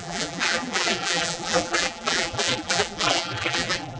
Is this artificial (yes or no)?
yes